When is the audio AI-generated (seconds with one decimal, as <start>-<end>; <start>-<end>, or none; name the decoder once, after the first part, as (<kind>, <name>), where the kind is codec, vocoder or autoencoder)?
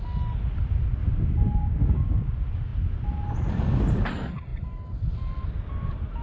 1.0-2.3 (codec, DAC)